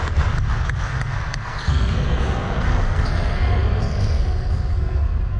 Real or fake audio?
fake